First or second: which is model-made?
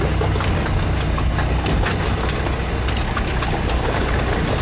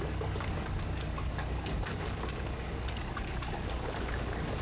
second